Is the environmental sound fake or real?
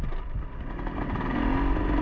real